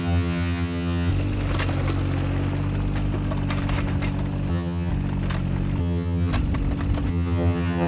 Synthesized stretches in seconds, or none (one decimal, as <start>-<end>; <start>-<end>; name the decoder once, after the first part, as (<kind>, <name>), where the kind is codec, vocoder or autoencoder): 0.0-1.1 (vocoder, HiFi-GAN); 4.5-4.9; 5.8-6.3; 7.1-7.9